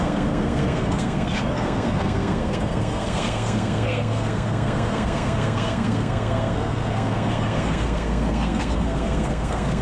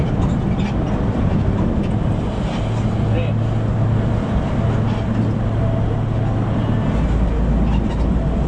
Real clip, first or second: second